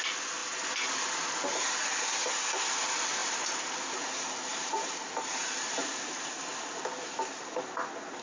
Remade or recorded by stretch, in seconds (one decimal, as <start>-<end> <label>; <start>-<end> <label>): 0.0-4.5 recorded; 4.5-6.4 remade; 6.4-8.2 recorded